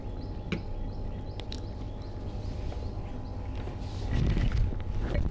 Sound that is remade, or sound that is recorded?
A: recorded